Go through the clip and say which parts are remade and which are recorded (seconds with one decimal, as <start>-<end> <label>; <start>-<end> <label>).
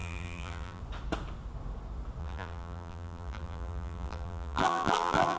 0.0-0.8 remade; 0.8-2.2 recorded; 2.2-5.4 remade